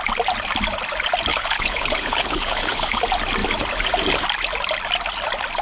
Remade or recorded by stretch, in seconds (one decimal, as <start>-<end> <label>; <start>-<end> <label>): 0.0-1.3 recorded; 1.3-3.0 remade; 3.0-5.6 recorded